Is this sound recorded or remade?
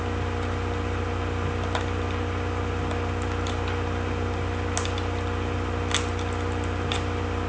recorded